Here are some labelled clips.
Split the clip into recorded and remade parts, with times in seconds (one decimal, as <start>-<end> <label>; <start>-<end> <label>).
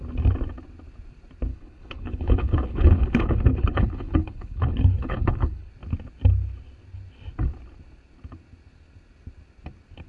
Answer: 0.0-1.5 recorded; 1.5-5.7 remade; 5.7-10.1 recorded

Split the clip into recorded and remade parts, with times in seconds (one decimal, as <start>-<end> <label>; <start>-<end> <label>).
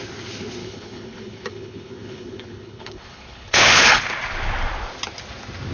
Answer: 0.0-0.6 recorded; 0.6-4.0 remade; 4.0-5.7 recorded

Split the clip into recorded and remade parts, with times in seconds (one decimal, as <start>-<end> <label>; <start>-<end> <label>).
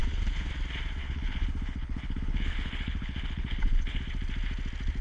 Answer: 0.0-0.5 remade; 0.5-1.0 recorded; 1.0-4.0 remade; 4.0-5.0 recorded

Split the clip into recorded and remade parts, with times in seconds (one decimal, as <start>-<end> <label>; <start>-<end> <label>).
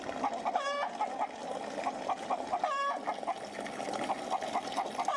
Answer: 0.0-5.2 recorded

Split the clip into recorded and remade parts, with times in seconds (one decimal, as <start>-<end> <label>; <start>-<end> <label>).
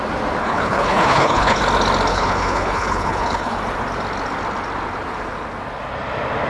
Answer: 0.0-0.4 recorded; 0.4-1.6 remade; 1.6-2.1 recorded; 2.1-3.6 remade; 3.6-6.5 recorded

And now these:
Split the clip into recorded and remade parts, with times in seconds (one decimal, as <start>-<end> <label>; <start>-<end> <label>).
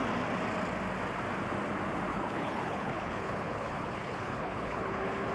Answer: 0.0-2.1 recorded; 2.1-5.3 remade